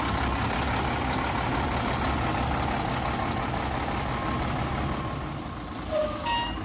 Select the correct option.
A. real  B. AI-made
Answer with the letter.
A